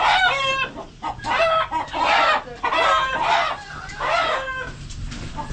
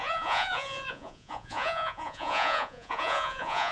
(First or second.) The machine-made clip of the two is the second